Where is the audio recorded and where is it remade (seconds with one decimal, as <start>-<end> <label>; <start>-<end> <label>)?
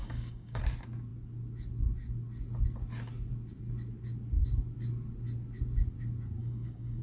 0.0-0.6 remade; 0.6-6.4 recorded; 6.4-7.0 remade